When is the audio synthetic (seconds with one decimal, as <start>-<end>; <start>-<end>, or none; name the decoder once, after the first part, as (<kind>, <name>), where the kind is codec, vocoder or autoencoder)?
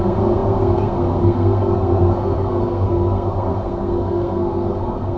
0.0-5.2 (codec, SNAC)